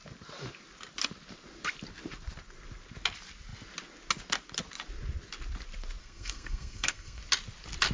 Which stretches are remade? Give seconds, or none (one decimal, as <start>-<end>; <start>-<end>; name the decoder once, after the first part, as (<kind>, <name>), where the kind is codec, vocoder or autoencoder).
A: 6.0-7.2 (codec, SNAC)